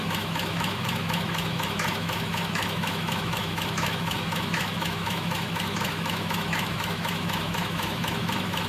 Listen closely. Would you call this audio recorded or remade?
remade